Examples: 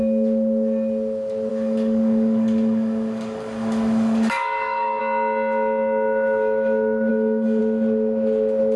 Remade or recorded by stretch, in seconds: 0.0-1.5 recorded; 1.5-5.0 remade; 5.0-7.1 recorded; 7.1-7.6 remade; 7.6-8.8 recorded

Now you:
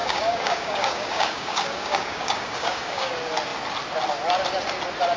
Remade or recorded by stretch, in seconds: 0.0-3.1 remade; 3.1-5.2 recorded

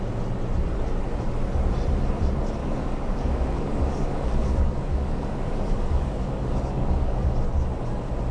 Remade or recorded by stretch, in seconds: 0.0-2.6 recorded; 2.6-7.5 remade; 7.5-8.3 recorded

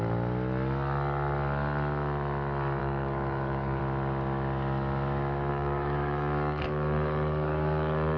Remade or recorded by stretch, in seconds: 0.0-2.8 recorded; 2.8-3.8 remade; 3.8-5.5 recorded; 5.5-8.2 remade

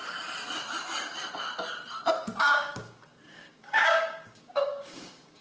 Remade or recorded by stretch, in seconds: 0.0-2.4 recorded; 2.4-5.4 remade

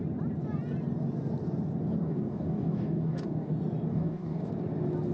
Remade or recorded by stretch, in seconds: 0.0-2.0 recorded; 2.0-3.5 remade; 3.5-3.9 recorded; 3.9-4.5 remade; 4.5-5.1 recorded

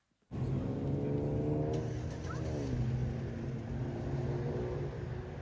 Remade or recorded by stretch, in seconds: 0.0-5.4 recorded